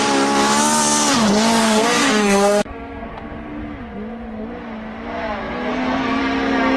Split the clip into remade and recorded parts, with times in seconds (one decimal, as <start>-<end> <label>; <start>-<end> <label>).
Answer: 0.0-1.6 recorded; 1.6-3.6 remade; 3.6-5.4 recorded; 5.4-6.2 remade; 6.2-6.8 recorded